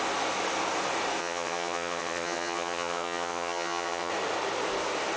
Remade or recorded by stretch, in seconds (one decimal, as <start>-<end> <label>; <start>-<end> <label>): 0.0-1.2 recorded; 1.2-4.1 remade; 4.1-5.2 recorded